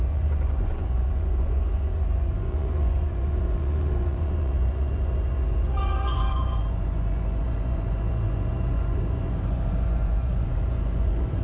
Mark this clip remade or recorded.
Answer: remade